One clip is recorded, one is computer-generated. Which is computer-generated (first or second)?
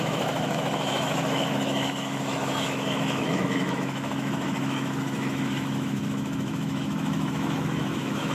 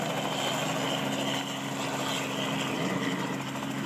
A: first